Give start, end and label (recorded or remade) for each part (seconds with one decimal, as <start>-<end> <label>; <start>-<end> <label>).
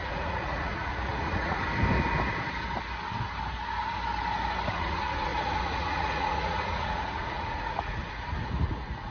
0.0-1.6 remade; 1.6-4.7 recorded; 4.7-9.1 remade